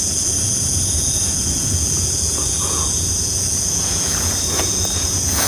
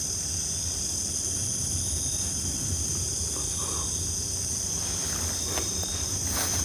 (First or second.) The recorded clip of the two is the second